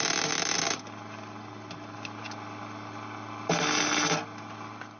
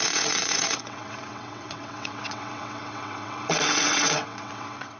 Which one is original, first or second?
first